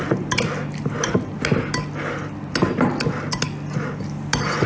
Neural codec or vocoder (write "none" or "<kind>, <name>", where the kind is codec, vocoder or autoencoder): none